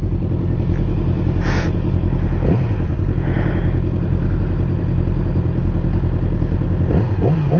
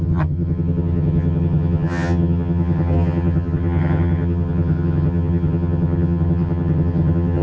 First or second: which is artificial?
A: second